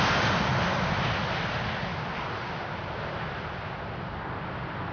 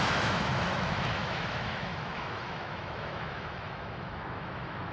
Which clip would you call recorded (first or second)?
first